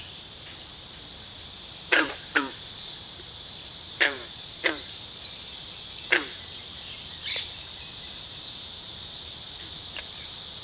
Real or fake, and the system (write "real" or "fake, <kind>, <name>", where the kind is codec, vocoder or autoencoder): fake, vocoder, BigVGAN v2